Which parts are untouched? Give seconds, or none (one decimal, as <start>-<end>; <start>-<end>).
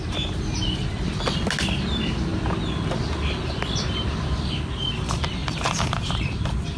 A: 0.0-5.4